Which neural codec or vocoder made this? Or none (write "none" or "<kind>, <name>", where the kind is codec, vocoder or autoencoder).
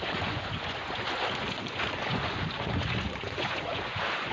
vocoder, Vocos